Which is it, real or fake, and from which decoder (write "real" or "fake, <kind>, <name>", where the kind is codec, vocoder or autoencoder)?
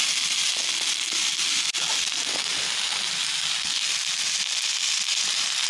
real